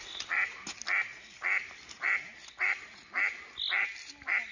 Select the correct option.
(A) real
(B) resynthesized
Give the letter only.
A